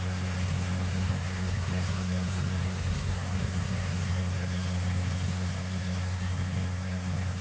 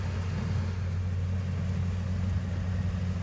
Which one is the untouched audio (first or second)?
second